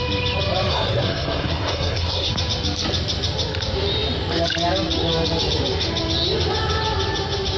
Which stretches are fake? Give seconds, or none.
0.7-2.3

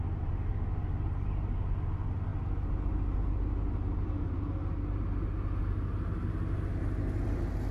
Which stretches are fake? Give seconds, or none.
none

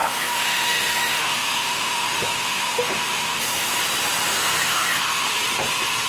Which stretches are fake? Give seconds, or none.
0.0-3.7; 4.3-5.3

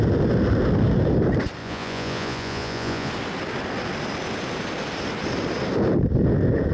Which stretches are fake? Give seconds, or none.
1.6-3.1